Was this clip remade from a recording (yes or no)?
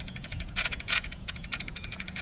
yes